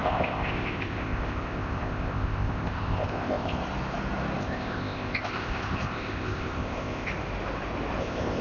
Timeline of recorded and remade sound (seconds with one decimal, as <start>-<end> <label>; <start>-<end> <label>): 0.0-3.6 remade; 3.6-4.4 recorded; 4.4-7.1 remade; 7.1-8.0 recorded; 8.0-8.4 remade